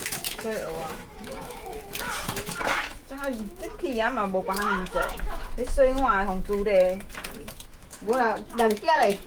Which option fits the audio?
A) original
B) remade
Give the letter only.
B